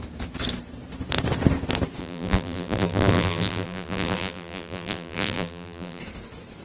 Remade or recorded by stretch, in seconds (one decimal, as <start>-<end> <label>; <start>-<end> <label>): 0.0-2.0 recorded; 2.0-6.0 remade; 6.0-6.6 recorded